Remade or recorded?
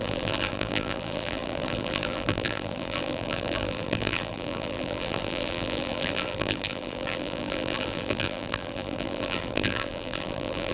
remade